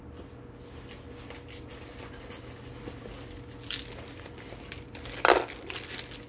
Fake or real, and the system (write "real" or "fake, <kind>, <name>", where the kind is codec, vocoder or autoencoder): real